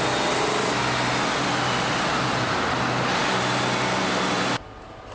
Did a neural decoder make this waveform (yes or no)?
no